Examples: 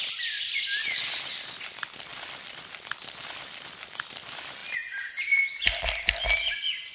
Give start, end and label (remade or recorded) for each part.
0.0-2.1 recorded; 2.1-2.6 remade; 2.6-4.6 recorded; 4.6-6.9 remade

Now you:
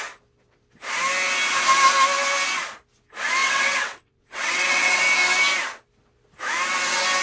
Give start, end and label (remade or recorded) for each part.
0.0-3.4 recorded; 3.4-5.0 remade; 5.0-7.2 recorded

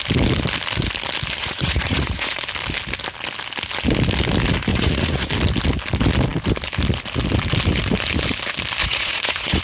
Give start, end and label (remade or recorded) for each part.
0.0-1.4 recorded; 1.4-2.4 remade; 2.4-4.7 recorded; 4.7-5.3 remade; 5.3-8.8 recorded; 8.8-9.6 remade

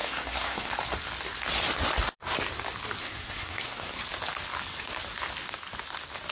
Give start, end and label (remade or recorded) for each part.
0.0-0.7 remade; 0.7-3.0 recorded; 3.0-4.0 remade; 4.0-6.3 recorded